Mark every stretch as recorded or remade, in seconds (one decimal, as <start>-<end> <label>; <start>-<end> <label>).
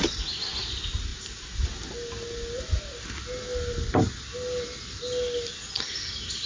0.0-6.5 recorded